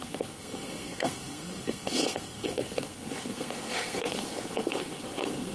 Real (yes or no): no